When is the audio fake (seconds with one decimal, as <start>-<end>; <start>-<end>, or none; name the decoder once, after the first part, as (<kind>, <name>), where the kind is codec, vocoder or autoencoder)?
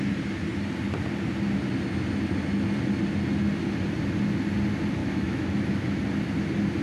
5.0-6.0 (autoencoder, DAC-VAE)